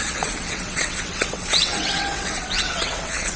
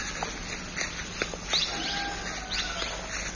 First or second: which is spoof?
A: first